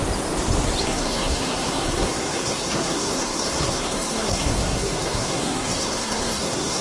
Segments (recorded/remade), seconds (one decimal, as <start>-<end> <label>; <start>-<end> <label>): 0.0-0.8 recorded; 0.8-6.8 remade